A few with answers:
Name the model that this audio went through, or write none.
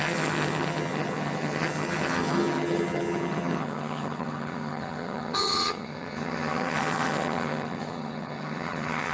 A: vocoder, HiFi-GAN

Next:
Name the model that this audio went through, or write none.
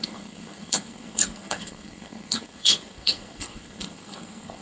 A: codec, SNAC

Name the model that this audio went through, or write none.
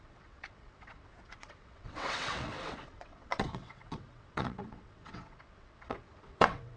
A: vocoder, WaveNeXt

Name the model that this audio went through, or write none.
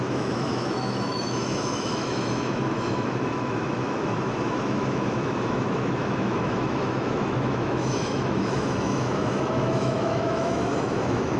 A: autoencoder, DAC-VAE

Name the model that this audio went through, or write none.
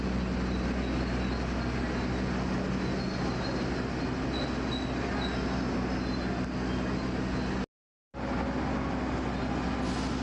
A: none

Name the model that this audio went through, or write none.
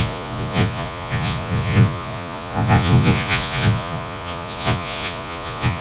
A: vocoder, Vocos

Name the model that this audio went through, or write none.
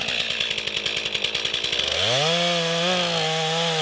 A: none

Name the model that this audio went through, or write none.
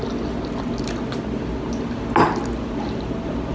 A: none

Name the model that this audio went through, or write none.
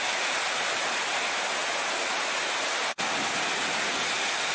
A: none